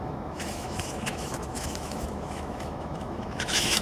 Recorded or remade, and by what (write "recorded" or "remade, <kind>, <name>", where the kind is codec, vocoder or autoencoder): remade, autoencoder, DAC-VAE